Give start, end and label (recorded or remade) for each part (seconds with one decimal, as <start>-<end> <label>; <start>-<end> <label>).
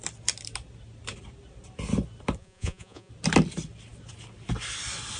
0.0-2.4 recorded; 2.4-3.1 remade; 3.1-5.2 recorded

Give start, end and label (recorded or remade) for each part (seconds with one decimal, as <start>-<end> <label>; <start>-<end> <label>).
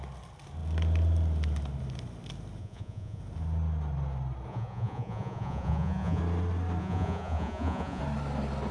0.0-2.6 recorded; 2.6-3.2 remade; 3.2-4.5 recorded; 4.5-6.2 remade; 6.2-6.8 recorded; 6.8-8.0 remade; 8.0-8.7 recorded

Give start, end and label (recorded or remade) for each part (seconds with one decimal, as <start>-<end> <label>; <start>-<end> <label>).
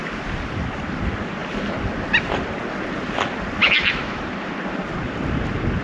0.0-3.6 recorded; 3.6-4.2 remade; 4.2-5.8 recorded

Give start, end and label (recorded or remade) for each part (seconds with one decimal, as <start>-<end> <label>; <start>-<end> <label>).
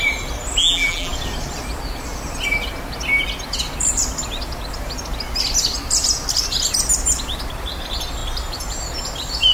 0.0-0.6 recorded; 0.6-1.1 remade; 1.1-9.5 recorded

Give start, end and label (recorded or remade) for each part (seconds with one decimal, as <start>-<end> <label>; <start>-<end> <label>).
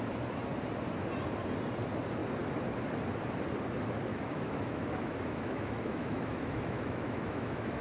0.0-4.1 recorded; 4.1-7.8 remade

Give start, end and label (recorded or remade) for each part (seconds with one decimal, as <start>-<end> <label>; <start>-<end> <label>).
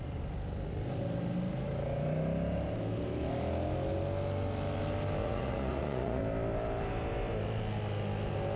0.0-5.2 recorded; 5.2-6.2 remade; 6.2-8.6 recorded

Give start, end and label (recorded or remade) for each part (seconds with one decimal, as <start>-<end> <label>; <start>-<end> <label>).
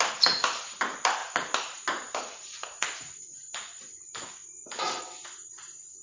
0.0-6.0 recorded